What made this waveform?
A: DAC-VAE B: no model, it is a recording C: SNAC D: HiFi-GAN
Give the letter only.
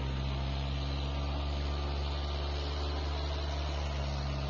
B